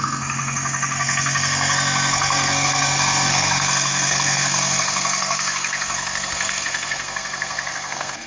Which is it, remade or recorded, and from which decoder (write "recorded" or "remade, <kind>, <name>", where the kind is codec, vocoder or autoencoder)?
remade, codec, SNAC